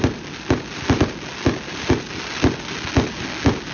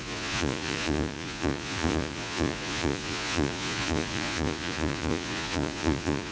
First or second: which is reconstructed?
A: second